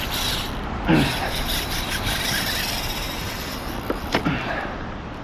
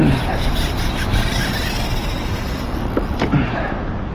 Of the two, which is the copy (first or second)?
first